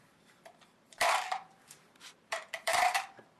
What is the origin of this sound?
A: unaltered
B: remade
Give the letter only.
B